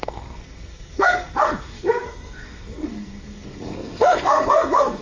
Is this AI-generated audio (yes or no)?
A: yes